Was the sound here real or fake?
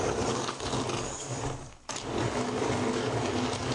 fake